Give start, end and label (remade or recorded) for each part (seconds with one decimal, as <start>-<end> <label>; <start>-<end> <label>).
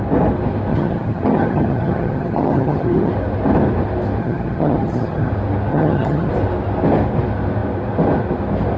0.0-0.7 recorded; 0.7-3.1 remade; 3.1-4.2 recorded; 4.2-5.3 remade; 5.3-5.7 recorded; 5.7-6.3 remade; 6.3-8.8 recorded